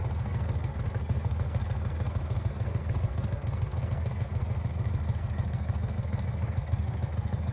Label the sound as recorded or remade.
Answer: remade